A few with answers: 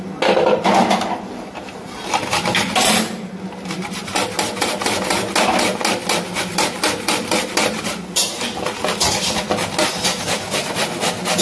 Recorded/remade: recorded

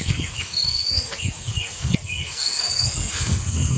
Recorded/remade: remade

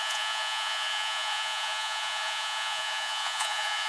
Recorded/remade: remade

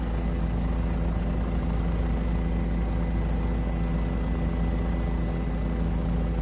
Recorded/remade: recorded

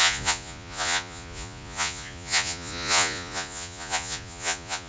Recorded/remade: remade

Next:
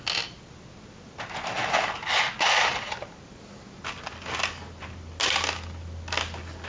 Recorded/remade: recorded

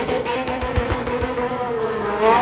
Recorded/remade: remade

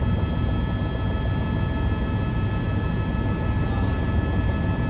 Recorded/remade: recorded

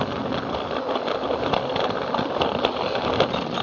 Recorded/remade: recorded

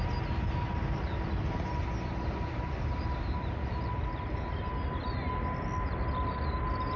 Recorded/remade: recorded